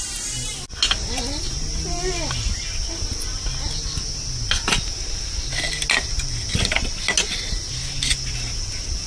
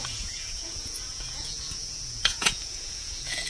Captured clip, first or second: first